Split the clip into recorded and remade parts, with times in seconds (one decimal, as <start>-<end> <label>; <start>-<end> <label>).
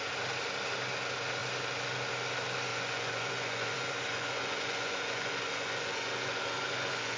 0.0-2.7 recorded; 2.7-7.2 remade